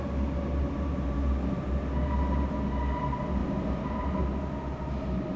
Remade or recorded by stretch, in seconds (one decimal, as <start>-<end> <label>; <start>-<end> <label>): 0.0-3.4 recorded; 3.4-4.2 remade; 4.2-5.4 recorded